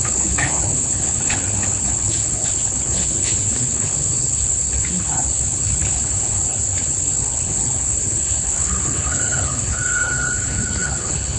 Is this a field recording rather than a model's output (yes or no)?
no